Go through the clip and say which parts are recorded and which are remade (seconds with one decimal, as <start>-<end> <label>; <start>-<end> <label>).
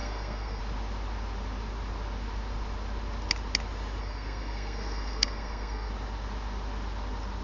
0.0-0.6 remade; 0.6-4.0 recorded; 4.0-5.9 remade; 5.9-7.4 recorded